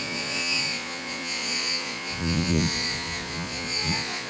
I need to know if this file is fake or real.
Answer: fake